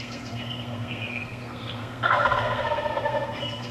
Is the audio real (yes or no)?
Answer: no